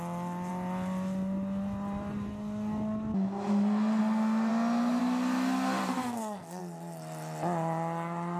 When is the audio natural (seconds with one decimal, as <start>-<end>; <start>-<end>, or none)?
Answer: 0.0-5.8; 6.6-8.4